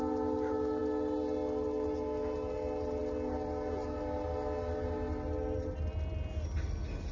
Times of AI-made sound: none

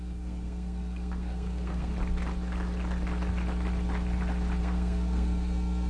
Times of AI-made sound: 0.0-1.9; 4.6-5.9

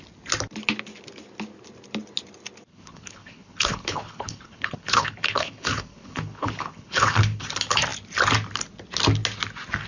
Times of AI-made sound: 2.7-7.4